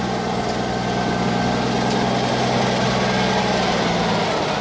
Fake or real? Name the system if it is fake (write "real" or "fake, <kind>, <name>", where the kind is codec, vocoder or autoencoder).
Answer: real